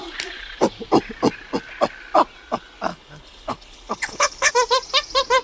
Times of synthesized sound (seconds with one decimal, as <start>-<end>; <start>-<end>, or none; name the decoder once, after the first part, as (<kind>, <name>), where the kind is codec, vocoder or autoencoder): 2.9-4.5 (codec, HILCodec)